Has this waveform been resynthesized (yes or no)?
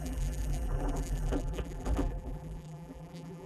yes